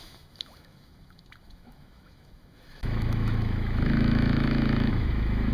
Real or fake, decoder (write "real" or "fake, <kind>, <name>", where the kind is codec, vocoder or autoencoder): fake, autoencoder, DAC-VAE